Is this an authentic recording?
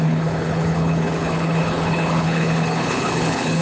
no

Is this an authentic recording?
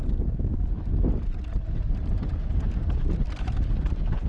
yes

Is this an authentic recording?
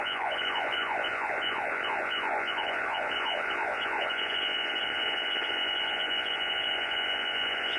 no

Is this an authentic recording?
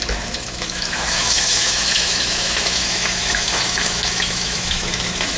no